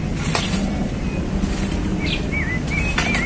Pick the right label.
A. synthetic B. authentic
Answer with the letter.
B